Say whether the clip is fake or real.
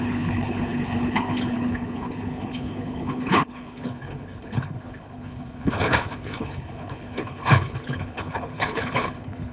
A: fake